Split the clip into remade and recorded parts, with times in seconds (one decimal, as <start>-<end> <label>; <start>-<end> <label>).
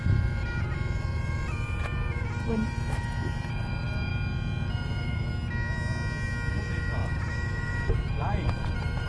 0.0-4.1 remade; 4.1-4.7 recorded; 4.7-5.3 remade; 5.3-6.5 recorded; 6.5-9.1 remade